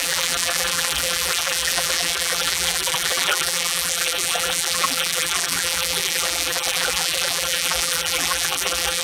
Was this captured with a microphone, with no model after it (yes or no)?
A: no